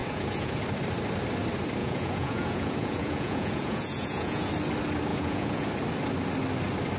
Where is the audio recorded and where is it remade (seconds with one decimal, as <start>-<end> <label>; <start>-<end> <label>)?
0.0-0.6 remade; 0.6-1.8 recorded; 1.8-4.5 remade; 4.5-5.1 recorded; 5.1-5.7 remade; 5.7-7.0 recorded

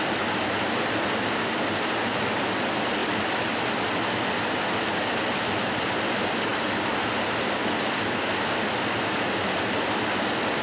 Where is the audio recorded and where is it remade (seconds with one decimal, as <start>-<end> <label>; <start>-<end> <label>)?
0.0-10.6 recorded

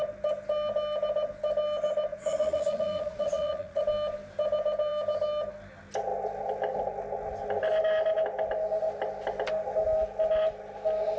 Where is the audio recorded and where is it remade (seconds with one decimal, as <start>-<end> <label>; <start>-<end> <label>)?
0.0-2.1 recorded; 2.1-3.8 remade; 3.8-11.2 recorded

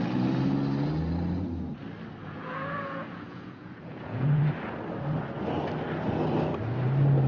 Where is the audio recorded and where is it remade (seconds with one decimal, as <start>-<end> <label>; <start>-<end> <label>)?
0.0-2.2 recorded; 2.2-4.4 remade; 4.4-7.3 recorded